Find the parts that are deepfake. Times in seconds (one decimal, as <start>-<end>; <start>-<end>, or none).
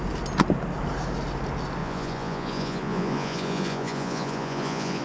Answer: 1.8-5.0